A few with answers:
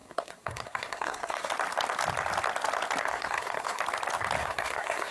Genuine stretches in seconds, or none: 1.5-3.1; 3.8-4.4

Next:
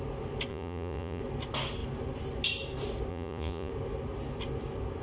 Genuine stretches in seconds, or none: 0.0-0.5; 1.2-3.1; 3.7-5.0

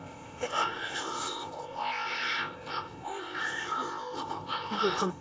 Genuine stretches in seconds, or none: none

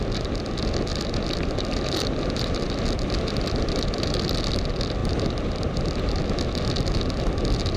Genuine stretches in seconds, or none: 0.0-0.9; 4.4-5.0; 6.1-7.8

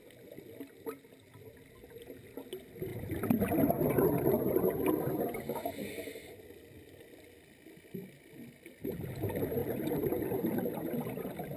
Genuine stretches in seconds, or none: 0.0-9.6

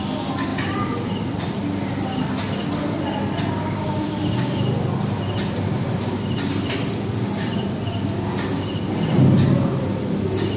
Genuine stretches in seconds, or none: 0.0-10.6